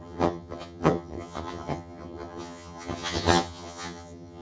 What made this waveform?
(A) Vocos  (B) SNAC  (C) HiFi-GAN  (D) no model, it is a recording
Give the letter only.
C